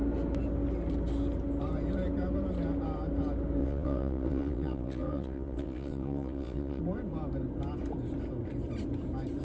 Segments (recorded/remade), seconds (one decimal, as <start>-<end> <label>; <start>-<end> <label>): 0.0-3.6 recorded; 3.6-6.8 remade; 6.8-9.4 recorded